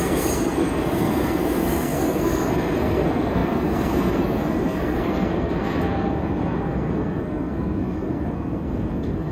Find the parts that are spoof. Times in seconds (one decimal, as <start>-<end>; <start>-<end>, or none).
0.0-9.3